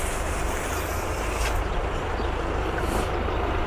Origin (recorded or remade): recorded